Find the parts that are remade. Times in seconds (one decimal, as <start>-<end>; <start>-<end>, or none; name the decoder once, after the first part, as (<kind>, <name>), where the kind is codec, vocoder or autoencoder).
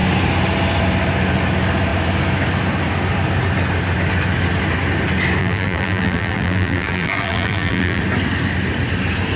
5.4-8.0 (vocoder, BigVGAN v2)